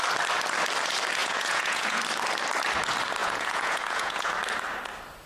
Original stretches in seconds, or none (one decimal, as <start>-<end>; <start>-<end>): 0.0-1.2; 2.0-3.2; 4.3-5.3